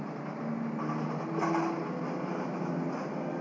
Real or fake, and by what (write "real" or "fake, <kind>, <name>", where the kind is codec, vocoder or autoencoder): real